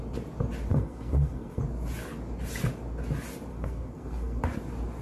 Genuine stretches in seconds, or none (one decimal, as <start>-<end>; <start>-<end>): 0.0-0.7; 1.6-3.5; 4.4-5.0